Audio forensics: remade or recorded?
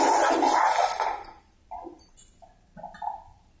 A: recorded